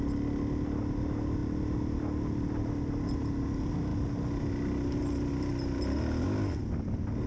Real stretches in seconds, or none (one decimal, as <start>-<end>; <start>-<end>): 0.0-7.3